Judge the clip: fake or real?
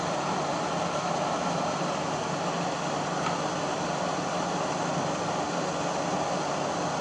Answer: real